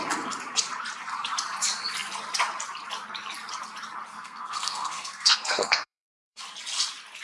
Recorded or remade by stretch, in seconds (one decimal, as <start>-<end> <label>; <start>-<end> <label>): 0.0-4.1 recorded; 4.1-6.4 remade; 6.4-7.2 recorded